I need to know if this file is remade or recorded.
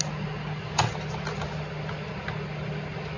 recorded